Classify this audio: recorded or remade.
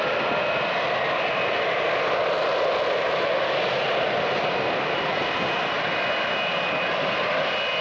recorded